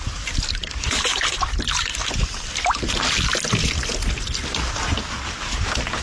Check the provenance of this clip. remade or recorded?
recorded